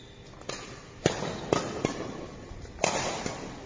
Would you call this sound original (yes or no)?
yes